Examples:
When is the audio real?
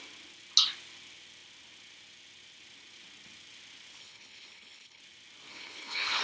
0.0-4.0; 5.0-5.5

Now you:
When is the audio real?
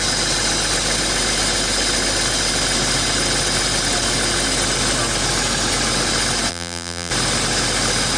0.0-6.5; 7.1-8.2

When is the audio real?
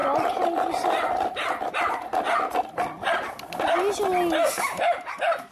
0.0-5.5